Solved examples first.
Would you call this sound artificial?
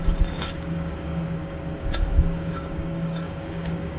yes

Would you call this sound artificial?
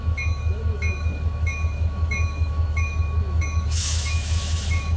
yes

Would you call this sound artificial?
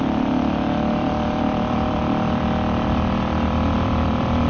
yes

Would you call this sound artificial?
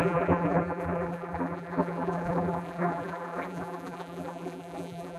yes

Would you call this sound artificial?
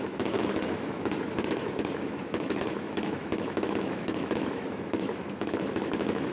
yes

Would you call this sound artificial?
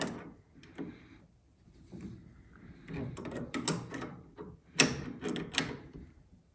no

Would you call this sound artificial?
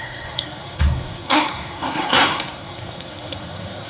yes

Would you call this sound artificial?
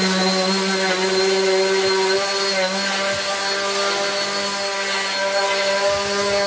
no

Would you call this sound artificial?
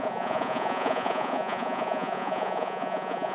yes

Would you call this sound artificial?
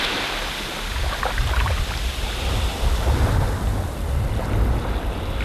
no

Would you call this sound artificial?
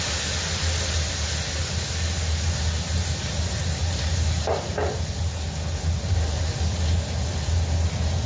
no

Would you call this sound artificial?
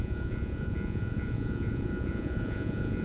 yes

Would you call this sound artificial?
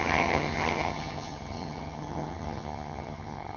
yes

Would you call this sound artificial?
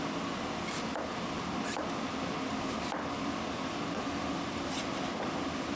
no